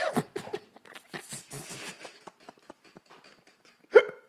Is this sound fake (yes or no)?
no